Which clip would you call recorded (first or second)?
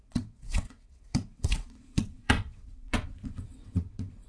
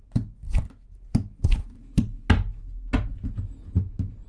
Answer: second